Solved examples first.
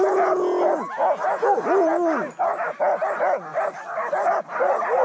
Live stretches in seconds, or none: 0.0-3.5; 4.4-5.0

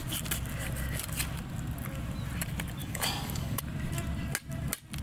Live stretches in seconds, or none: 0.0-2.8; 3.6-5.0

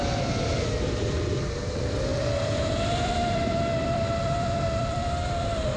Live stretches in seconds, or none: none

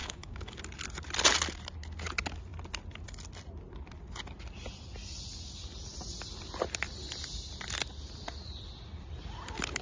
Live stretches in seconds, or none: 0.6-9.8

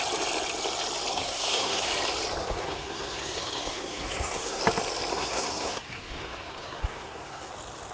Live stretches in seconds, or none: 0.0-1.1; 1.9-2.4; 4.6-5.1; 7.5-7.9

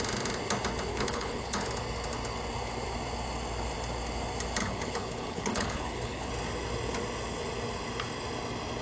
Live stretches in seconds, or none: 0.0-0.9; 1.5-4.6; 6.3-8.8

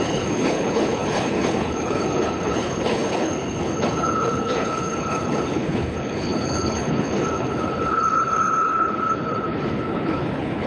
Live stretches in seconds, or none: none